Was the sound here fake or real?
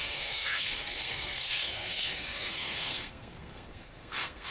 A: fake